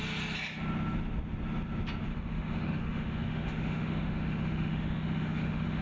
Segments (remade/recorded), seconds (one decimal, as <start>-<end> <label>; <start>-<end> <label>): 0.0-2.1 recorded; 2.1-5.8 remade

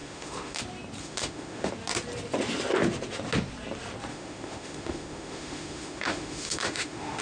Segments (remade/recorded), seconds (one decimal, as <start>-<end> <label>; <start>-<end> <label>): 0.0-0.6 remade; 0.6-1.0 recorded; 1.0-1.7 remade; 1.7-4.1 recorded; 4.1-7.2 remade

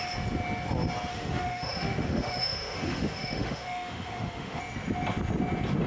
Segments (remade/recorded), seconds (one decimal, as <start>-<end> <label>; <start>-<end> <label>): 0.0-1.1 recorded; 1.1-4.6 remade; 4.6-5.9 recorded

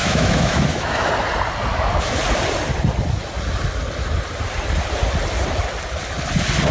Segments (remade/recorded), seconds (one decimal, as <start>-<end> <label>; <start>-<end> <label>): 0.0-1.1 remade; 1.1-1.7 recorded; 1.7-2.2 remade; 2.2-6.7 recorded